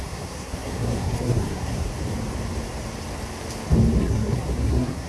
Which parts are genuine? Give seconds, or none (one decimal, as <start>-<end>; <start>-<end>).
1.9-4.0